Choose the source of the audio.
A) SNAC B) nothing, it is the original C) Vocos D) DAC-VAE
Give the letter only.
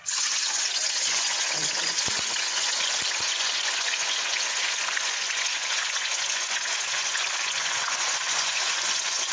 C